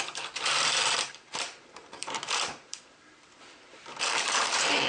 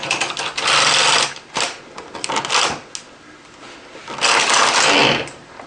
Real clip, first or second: second